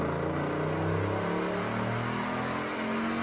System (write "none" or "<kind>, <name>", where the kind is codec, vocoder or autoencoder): none